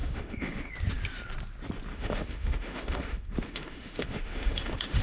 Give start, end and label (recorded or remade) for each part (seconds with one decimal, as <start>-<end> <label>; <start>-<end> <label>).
0.0-0.7 remade; 0.7-1.9 recorded; 1.9-5.0 remade